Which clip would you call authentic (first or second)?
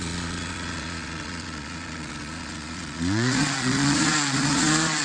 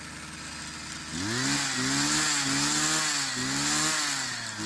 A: second